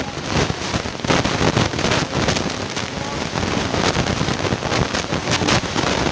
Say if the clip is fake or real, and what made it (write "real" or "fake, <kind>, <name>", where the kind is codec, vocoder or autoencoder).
real